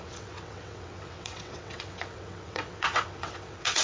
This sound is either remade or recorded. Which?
remade